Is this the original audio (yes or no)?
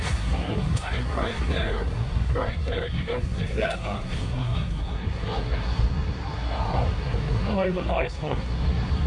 no